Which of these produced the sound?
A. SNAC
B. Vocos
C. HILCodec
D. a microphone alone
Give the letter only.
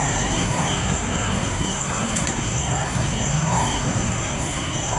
A